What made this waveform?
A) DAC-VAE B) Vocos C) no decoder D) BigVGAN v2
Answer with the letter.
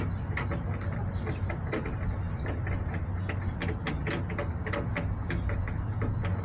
C